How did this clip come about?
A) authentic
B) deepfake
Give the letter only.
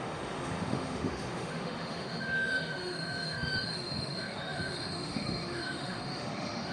B